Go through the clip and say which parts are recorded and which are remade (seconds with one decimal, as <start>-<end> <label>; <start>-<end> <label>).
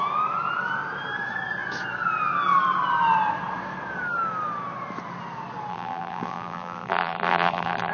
0.0-5.7 recorded; 5.7-7.9 remade